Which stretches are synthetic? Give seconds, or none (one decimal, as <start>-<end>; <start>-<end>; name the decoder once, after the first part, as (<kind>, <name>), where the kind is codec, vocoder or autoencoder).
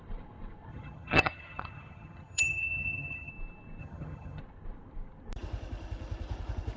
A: 0.7-3.3 (vocoder, HiFi-GAN); 3.8-4.4